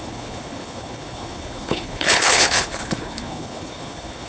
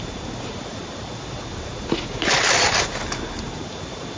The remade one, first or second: first